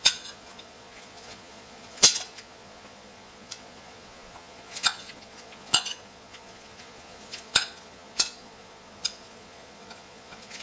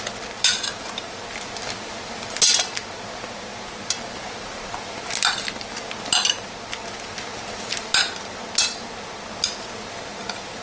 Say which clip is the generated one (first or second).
first